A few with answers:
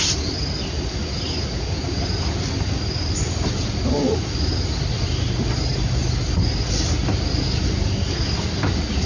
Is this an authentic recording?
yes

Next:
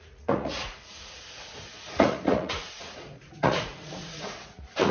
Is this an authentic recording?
no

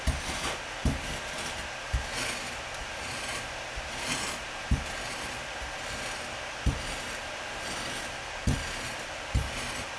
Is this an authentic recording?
yes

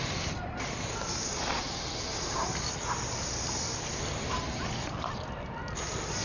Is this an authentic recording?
yes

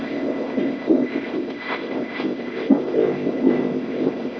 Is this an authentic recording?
no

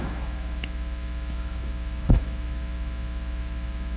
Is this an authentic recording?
no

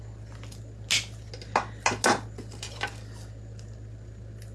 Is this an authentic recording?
yes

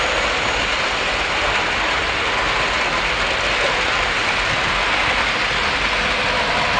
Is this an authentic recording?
yes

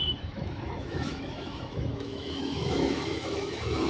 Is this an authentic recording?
no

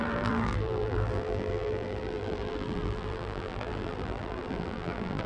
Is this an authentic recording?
no